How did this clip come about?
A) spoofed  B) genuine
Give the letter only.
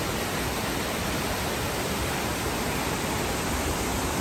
B